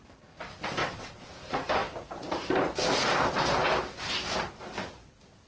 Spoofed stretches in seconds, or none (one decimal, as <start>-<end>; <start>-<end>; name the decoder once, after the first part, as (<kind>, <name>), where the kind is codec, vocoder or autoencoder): 0.8-1.3 (vocoder, WaveNeXt)